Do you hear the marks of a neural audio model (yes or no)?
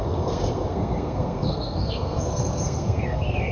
yes